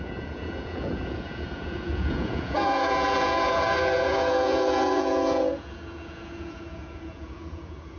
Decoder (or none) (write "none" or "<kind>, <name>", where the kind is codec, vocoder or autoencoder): vocoder, Vocos